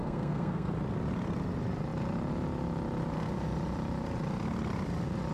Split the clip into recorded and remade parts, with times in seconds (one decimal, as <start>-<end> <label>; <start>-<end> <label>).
0.0-0.7 remade; 0.7-5.3 recorded